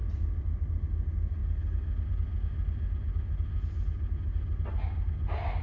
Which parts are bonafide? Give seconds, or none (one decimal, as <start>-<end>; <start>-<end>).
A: 0.0-5.6